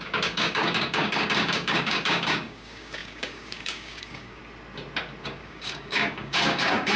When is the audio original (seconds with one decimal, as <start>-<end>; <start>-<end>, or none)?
4.4-5.2